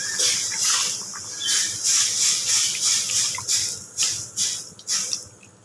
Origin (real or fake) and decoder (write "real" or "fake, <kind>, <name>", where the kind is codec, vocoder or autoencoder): real